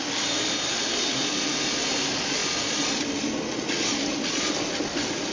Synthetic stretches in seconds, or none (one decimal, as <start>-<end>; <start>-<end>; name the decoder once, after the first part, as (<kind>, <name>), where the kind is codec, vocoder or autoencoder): none